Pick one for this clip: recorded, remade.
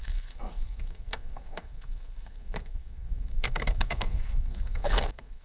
remade